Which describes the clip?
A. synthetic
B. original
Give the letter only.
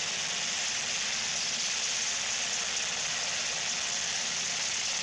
B